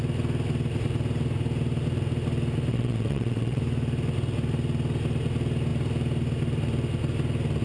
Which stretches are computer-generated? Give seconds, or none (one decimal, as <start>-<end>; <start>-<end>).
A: 2.7-3.6